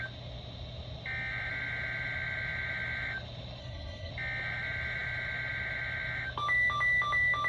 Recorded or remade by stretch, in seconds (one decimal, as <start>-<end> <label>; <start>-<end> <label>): 0.0-3.6 recorded; 3.6-4.1 remade; 4.1-7.5 recorded